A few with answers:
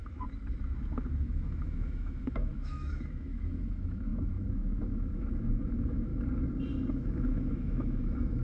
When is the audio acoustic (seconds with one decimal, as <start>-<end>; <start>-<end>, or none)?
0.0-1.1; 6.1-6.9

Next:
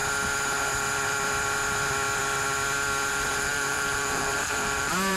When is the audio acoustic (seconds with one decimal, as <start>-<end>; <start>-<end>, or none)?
0.0-3.1

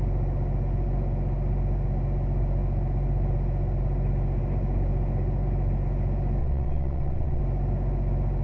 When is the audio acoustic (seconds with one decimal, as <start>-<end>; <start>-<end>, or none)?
0.0-6.4; 7.4-8.4

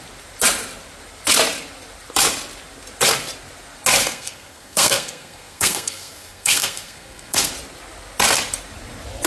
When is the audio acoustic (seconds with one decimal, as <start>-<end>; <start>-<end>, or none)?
0.0-4.0; 7.5-9.3

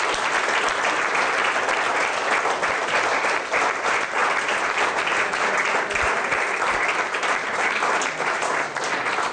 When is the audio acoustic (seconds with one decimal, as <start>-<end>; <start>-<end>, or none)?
0.0-9.3